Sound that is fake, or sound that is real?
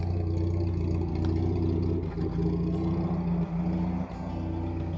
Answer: real